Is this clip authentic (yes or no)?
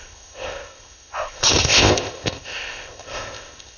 no